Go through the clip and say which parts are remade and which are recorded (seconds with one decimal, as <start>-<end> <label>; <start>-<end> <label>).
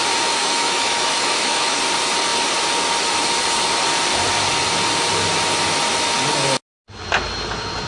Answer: 0.0-0.4 recorded; 0.4-1.8 remade; 1.8-7.9 recorded